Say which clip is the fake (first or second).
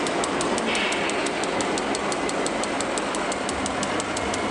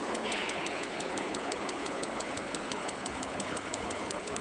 second